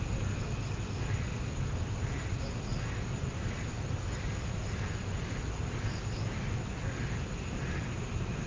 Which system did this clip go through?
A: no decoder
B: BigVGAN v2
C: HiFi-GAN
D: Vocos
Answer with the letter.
A